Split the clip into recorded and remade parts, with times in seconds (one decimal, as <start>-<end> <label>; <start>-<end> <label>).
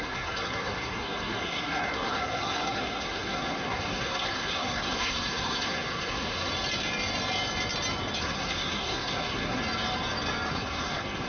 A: 0.0-6.5 remade; 6.5-8.2 recorded; 8.2-9.6 remade; 9.6-10.5 recorded; 10.5-11.3 remade